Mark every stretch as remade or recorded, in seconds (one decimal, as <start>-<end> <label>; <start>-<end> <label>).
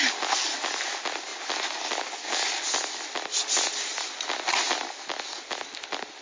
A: 0.0-6.2 recorded